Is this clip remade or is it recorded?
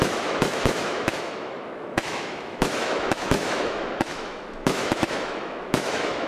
remade